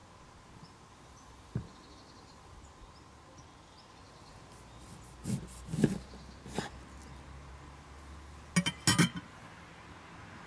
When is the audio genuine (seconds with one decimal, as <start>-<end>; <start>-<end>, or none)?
0.0-10.5